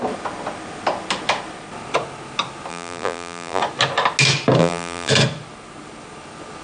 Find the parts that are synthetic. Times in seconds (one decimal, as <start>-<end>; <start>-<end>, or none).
2.7-3.6; 4.6-5.1

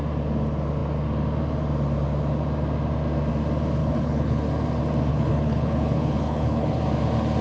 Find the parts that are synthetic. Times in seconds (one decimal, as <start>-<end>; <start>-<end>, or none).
3.8-4.4; 5.1-6.8